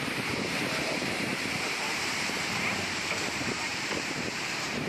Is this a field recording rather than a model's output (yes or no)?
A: no